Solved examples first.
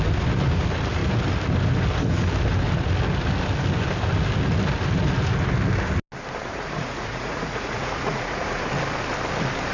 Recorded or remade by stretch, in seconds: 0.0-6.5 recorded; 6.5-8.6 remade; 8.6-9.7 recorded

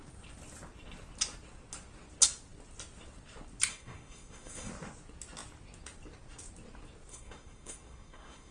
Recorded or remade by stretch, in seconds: 0.0-3.7 recorded; 3.7-4.7 remade; 4.7-7.1 recorded; 7.1-8.5 remade

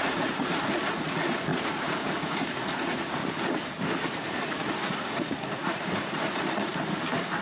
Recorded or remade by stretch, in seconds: 0.0-3.2 remade; 3.2-4.7 recorded; 4.7-6.7 remade; 6.7-7.4 recorded

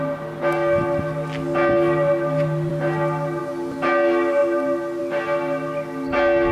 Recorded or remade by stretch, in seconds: 0.0-6.5 recorded

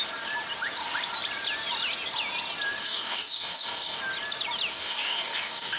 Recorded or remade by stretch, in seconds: 0.0-2.8 recorded; 2.8-4.0 remade; 4.0-4.7 recorded; 4.7-5.8 remade

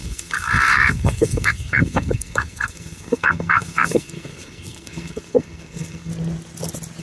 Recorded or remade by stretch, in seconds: 0.0-6.1 remade; 6.1-7.0 recorded

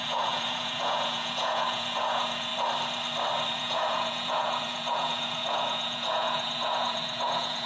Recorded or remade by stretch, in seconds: 0.0-2.5 remade; 2.5-3.5 recorded; 3.5-7.7 remade

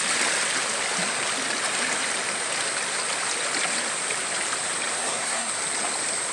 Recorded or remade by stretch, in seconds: 0.0-5.0 recorded; 5.0-5.5 remade; 5.5-6.3 recorded